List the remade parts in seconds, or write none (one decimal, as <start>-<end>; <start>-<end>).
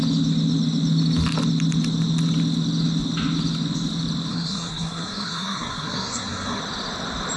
4.3-6.6